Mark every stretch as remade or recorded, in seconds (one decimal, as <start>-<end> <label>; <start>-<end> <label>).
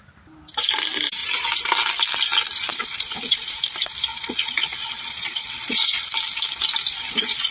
0.0-2.7 recorded; 2.7-3.6 remade; 3.6-4.1 recorded; 4.1-6.1 remade; 6.1-6.9 recorded; 6.9-7.5 remade